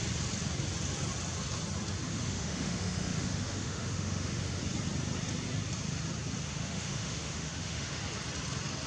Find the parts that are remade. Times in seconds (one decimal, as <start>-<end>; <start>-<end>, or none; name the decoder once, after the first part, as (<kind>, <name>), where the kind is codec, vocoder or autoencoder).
2.1-4.6 (autoencoder, DAC-VAE); 6.5-8.0